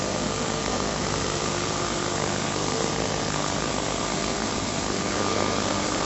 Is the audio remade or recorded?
remade